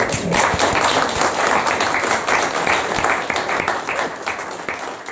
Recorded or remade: recorded